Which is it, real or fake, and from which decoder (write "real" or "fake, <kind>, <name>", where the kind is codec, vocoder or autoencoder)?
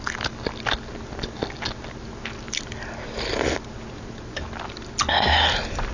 real